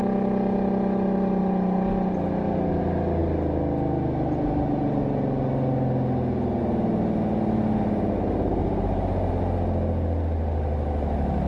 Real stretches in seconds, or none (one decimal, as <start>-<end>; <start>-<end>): 0.0-8.6; 9.3-11.5